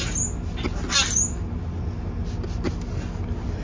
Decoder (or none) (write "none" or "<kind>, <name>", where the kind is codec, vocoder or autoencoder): none